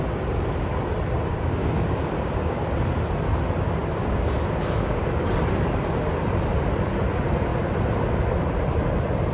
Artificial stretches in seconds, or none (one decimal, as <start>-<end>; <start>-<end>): 1.3-2.6; 3.8-5.3